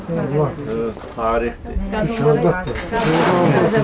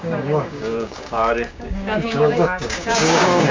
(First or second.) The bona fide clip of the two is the first